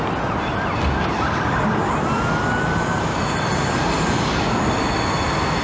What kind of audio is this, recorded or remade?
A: recorded